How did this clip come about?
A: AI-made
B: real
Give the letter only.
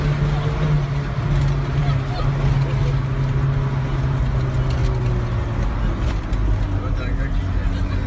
B